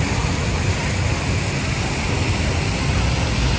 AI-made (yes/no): no